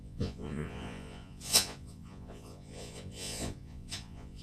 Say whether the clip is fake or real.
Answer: fake